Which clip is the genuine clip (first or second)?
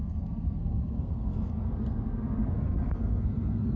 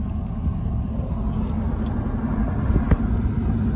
second